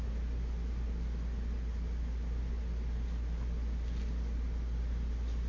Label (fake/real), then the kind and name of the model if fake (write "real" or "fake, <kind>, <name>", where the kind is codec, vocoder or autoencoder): real